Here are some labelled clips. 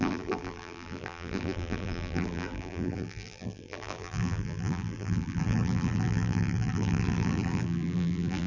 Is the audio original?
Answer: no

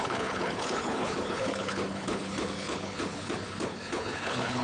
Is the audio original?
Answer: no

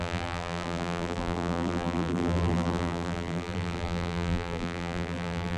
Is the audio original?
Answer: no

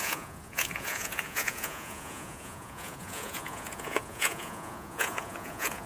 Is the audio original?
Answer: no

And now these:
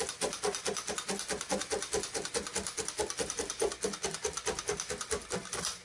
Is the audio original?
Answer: yes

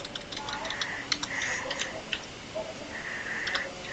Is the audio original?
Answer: yes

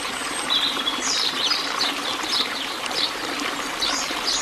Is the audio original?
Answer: no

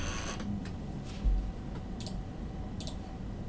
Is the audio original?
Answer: yes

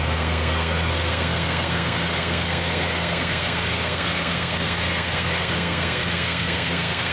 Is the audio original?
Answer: no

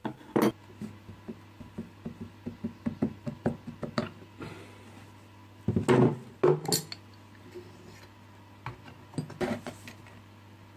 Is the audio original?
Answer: yes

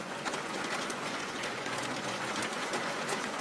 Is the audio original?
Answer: no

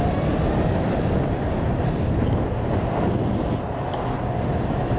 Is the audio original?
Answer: yes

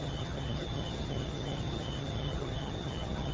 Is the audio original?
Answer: no